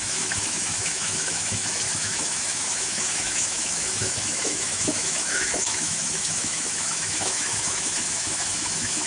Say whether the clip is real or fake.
fake